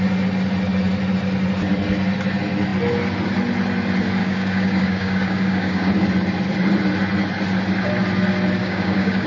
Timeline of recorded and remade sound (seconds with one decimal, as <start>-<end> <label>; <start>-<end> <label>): 0.0-4.2 recorded; 4.2-5.9 remade; 5.9-8.6 recorded; 8.6-9.3 remade

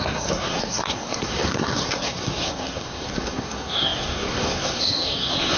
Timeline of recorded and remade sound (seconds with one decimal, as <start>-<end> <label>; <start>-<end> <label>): 0.0-5.6 remade

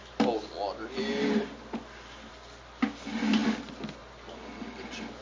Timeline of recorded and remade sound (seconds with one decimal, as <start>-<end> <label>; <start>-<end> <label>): 0.0-5.2 recorded

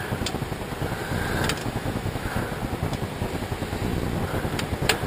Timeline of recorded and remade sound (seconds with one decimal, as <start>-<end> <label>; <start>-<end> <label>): 0.0-1.6 recorded; 1.6-2.4 remade; 2.4-5.1 recorded

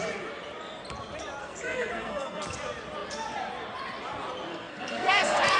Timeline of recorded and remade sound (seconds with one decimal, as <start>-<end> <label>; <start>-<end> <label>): 0.0-1.4 recorded; 1.4-2.4 remade; 2.4-4.5 recorded; 4.5-5.6 remade

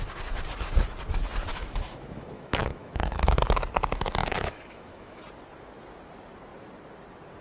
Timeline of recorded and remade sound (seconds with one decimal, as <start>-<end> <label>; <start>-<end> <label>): 0.0-1.5 recorded; 1.5-3.4 remade; 3.4-4.2 recorded; 4.2-5.2 remade; 5.2-7.4 recorded